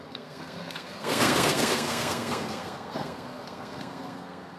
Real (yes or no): no